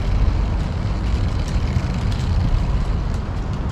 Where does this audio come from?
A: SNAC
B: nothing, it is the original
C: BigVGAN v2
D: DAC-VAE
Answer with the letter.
B